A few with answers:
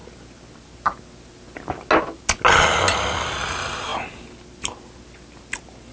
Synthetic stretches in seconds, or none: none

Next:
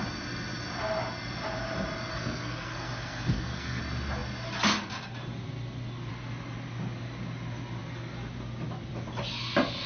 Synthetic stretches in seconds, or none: 2.1-3.8 (codec, SNAC)

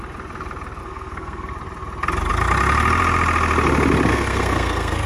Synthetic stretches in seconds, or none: 0.8-1.5 (codec, SNAC); 4.1-5.1